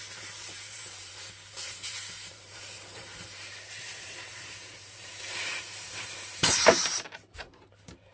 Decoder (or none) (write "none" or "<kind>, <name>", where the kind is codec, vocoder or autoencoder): vocoder, BigVGAN v2